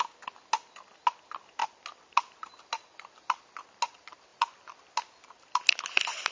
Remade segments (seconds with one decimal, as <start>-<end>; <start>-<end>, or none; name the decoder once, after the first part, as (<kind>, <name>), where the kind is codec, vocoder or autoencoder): 1.6-3.8 (vocoder, BigVGAN v2); 4.3-6.3